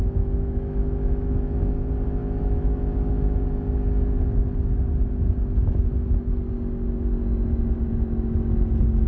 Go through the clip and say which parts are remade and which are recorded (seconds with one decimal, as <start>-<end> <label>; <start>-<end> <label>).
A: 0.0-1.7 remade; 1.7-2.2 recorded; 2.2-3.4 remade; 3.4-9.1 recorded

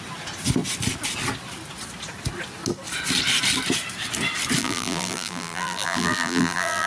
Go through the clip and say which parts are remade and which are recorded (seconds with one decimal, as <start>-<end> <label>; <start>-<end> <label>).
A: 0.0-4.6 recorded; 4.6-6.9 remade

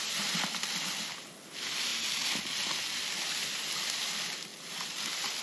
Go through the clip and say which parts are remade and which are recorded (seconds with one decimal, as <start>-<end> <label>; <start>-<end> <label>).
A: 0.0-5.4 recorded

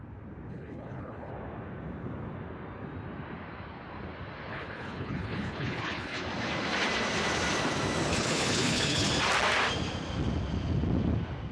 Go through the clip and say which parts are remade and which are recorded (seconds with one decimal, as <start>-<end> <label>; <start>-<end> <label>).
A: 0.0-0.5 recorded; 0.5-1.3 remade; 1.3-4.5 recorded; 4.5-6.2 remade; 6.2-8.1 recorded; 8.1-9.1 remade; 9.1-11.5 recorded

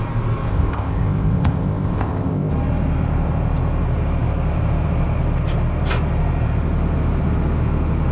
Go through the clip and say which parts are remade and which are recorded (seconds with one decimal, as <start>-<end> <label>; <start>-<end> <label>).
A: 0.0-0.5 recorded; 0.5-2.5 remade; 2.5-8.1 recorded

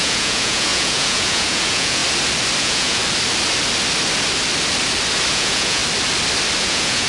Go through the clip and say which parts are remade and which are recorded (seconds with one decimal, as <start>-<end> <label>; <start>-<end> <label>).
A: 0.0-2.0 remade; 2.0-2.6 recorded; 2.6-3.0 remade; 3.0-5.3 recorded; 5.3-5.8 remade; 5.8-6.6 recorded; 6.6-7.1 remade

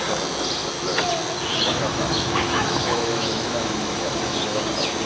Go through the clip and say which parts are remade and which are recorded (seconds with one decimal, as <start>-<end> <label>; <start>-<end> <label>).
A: 0.0-1.5 recorded; 1.5-4.6 remade; 4.6-5.1 recorded

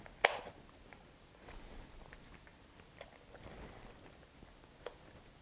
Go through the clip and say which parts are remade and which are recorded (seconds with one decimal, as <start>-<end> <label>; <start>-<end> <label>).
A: 0.0-0.9 recorded; 0.9-1.5 remade; 1.5-5.4 recorded